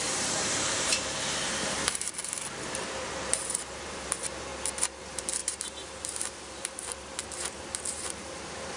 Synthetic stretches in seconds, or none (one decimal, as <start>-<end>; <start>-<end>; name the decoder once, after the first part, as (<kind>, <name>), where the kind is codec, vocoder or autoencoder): 0.0-4.5 (vocoder, BigVGAN v2); 5.0-8.8